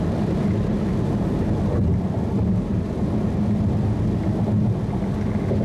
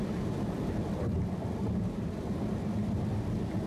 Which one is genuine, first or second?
first